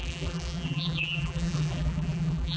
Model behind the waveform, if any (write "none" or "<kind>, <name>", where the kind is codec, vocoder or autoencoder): vocoder, BigVGAN v2